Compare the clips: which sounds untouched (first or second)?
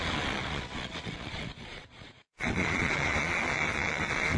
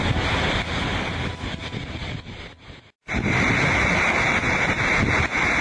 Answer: second